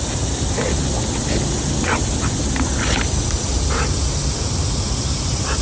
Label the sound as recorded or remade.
recorded